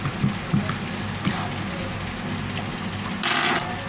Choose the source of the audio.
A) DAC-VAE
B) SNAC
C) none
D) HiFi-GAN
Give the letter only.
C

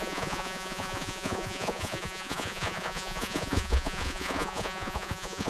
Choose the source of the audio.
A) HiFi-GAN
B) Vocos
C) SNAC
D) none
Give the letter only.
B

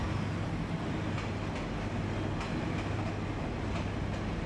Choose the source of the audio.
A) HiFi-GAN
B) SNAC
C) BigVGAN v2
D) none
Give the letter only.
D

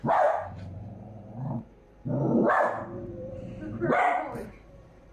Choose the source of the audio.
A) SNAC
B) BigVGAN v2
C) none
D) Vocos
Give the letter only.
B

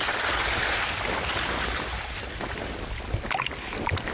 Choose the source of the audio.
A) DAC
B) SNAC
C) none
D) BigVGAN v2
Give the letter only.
C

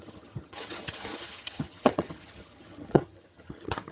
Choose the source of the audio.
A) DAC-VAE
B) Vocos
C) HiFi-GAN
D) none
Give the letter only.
C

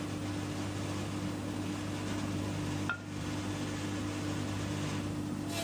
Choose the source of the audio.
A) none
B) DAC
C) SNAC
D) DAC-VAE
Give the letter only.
A